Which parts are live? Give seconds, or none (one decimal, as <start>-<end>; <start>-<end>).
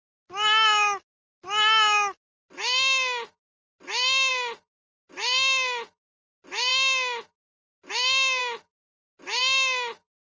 0.0-10.3